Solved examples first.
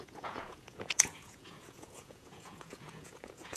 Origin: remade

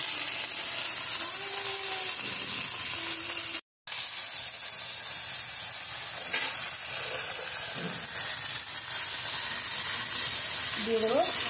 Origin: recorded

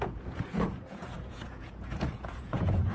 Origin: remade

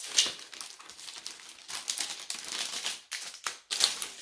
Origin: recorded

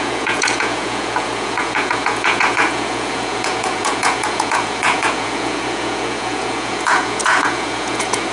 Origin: remade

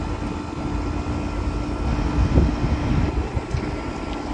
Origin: recorded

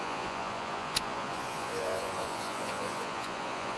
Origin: remade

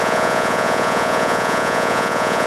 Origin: remade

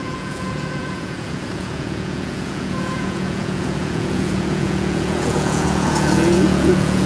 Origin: remade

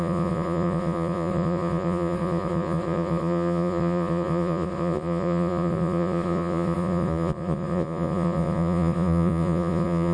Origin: remade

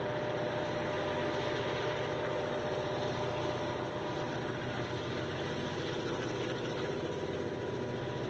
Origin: recorded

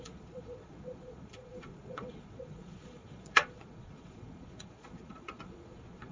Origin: remade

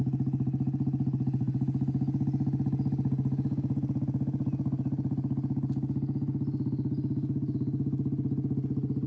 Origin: recorded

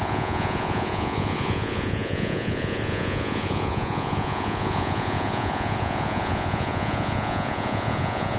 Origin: remade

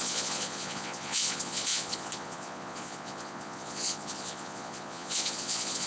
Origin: remade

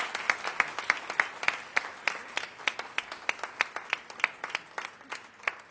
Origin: recorded